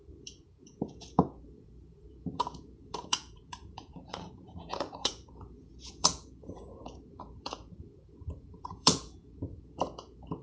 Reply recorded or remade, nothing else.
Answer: remade